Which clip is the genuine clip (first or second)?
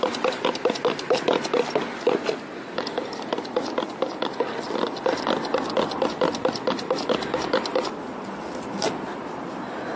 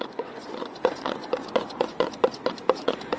first